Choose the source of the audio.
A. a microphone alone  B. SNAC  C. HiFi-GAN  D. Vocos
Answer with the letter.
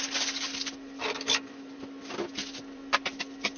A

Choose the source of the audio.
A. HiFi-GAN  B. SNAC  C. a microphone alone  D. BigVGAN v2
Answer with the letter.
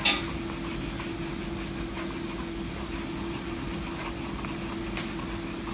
C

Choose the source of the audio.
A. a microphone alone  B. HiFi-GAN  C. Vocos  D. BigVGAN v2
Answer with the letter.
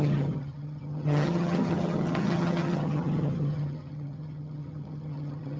B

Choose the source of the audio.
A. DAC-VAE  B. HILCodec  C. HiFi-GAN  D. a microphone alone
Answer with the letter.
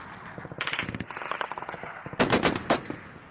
D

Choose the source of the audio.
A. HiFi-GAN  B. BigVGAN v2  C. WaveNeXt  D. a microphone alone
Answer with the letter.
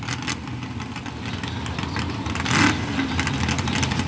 D